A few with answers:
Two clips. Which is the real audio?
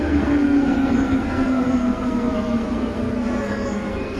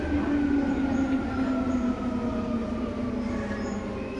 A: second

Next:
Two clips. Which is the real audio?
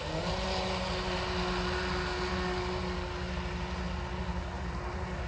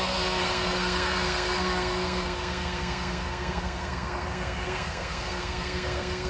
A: first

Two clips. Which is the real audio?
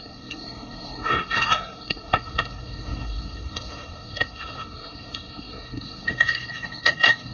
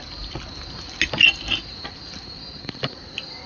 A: second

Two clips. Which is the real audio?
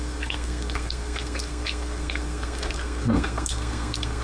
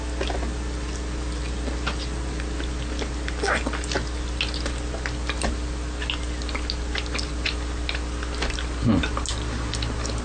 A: second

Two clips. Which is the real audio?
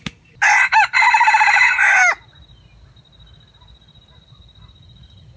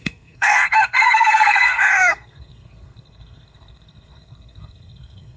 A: first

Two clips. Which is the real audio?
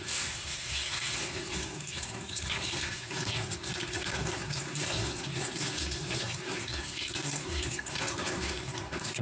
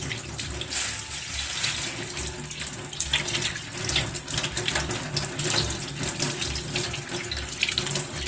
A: second